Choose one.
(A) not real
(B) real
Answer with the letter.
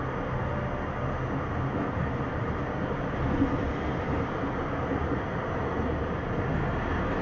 B